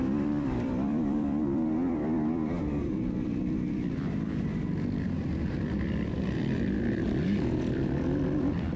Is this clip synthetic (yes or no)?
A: yes